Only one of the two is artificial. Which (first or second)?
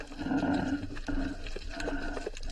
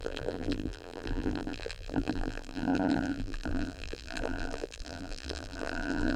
second